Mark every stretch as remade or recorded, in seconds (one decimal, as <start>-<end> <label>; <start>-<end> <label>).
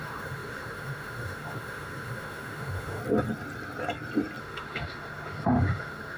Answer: 0.0-3.0 remade; 3.0-4.4 recorded; 4.4-6.2 remade